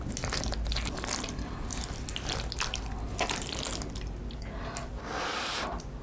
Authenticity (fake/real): real